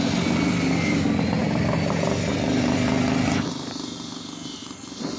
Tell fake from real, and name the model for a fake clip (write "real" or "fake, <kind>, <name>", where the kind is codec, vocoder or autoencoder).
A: real